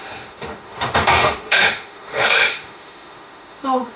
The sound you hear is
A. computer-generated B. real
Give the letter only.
A